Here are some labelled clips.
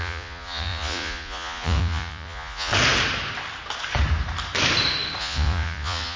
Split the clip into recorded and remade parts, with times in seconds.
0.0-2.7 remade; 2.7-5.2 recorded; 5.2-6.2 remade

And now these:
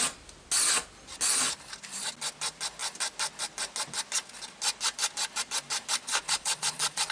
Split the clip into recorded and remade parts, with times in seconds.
0.0-6.1 recorded; 6.1-7.1 remade

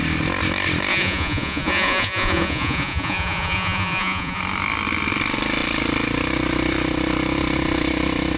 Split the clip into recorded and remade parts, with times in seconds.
0.0-0.9 recorded; 0.9-4.4 remade; 4.4-8.4 recorded